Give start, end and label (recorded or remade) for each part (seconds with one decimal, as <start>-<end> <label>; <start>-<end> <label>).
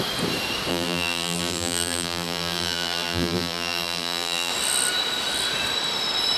0.0-0.7 recorded; 0.7-4.5 remade; 4.5-6.4 recorded